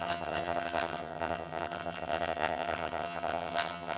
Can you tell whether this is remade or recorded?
remade